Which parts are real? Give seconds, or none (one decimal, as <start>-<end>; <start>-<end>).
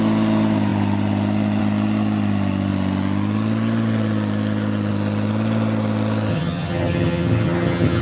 0.0-6.3